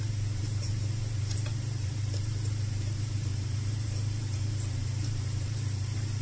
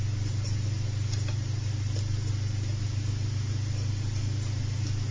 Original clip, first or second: second